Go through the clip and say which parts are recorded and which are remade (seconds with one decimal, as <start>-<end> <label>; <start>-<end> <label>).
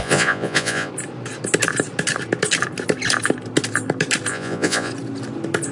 0.0-0.9 remade; 0.9-4.3 recorded; 4.3-4.9 remade; 4.9-5.7 recorded